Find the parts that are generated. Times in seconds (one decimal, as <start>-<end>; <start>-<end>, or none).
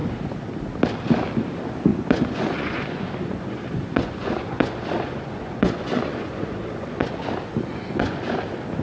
1.9-7.1; 7.7-8.2